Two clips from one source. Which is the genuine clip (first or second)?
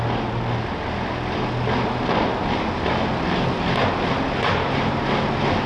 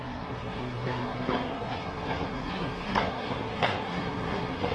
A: first